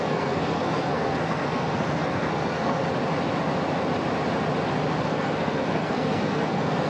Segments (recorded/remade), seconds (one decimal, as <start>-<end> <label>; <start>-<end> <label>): 0.0-2.8 remade; 2.8-5.0 recorded; 5.0-6.9 remade